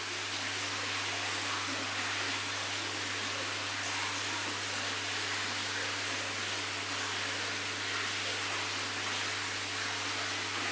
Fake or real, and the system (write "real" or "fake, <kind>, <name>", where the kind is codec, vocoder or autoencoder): real